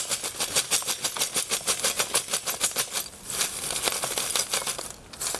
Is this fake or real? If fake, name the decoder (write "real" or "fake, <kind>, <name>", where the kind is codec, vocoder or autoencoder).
real